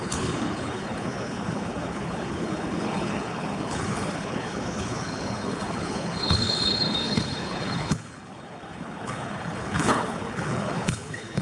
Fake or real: fake